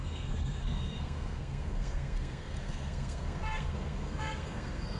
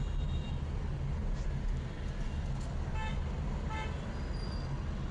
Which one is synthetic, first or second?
first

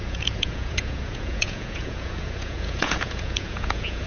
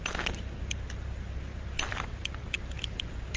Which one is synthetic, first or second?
first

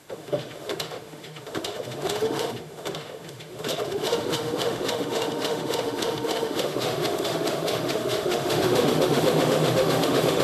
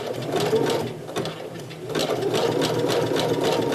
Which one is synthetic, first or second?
first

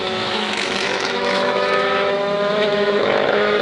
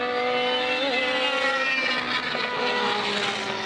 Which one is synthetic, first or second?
first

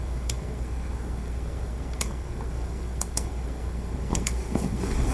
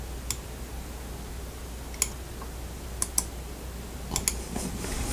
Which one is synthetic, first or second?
first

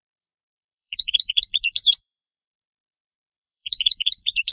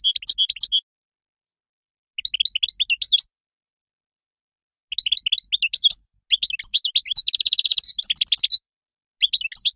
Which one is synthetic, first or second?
first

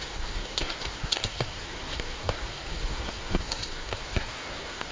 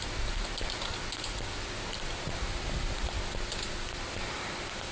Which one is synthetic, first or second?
first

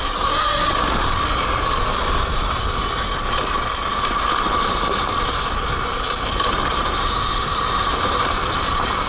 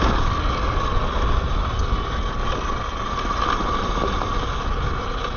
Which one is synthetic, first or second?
first